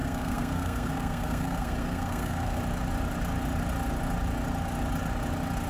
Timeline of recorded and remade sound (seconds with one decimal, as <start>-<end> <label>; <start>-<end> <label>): 0.0-2.6 remade; 2.6-5.7 recorded